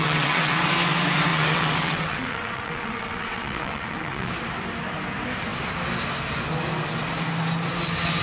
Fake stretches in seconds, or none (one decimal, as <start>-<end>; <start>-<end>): 0.0-0.6; 1.3-4.3